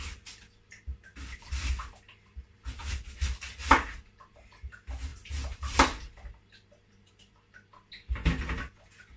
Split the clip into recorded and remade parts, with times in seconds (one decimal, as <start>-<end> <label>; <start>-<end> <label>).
0.0-1.1 recorded; 1.1-1.9 remade; 1.9-2.8 recorded; 2.8-4.5 remade; 4.5-5.1 recorded; 5.1-7.1 remade; 7.1-9.2 recorded